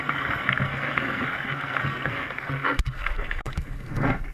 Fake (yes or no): yes